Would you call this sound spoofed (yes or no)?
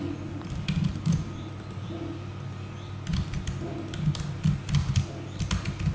no